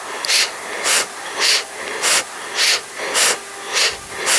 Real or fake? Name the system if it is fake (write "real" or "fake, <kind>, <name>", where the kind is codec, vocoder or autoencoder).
real